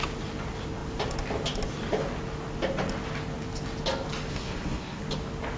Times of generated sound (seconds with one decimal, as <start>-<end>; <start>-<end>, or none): 4.3-5.0